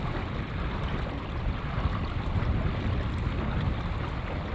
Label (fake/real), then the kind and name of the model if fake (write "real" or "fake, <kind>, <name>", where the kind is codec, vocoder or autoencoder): real